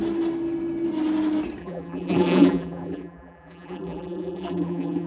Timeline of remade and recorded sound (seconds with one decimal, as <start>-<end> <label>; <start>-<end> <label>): 0.0-1.6 recorded; 1.6-5.1 remade